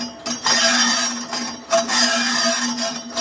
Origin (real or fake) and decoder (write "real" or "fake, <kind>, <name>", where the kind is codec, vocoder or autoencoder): real